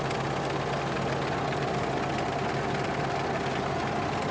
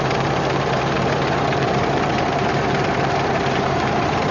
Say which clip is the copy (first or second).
second